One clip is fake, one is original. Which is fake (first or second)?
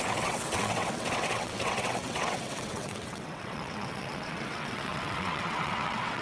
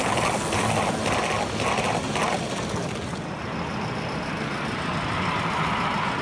first